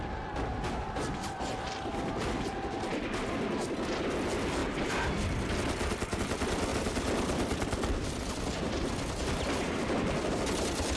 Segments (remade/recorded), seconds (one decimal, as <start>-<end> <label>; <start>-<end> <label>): 0.0-2.9 remade; 2.9-3.9 recorded; 3.9-6.7 remade; 6.7-10.3 recorded; 10.3-11.0 remade